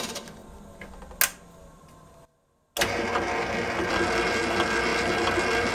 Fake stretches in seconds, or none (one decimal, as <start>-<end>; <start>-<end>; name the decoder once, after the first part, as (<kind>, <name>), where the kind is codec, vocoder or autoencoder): none

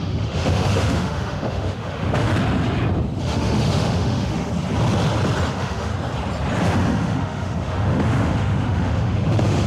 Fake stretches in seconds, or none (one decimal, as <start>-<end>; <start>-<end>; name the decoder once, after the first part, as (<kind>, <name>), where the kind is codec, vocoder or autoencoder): 0.0-2.3 (autoencoder, DAC-VAE); 3.2-4.5; 5.5-5.9; 6.6-9.7